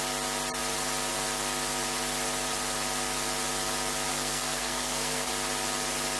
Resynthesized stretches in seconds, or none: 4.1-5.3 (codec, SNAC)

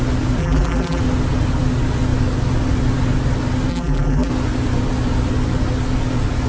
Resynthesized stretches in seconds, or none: 0.4-1.0 (vocoder, BigVGAN v2); 3.7-4.3

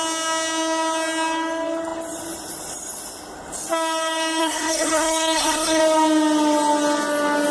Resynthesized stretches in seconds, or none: 4.4-5.8 (codec, SNAC)

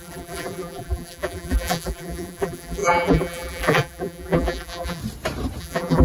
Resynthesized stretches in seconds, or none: 0.0-5.0 (vocoder, BigVGAN v2); 5.6-6.0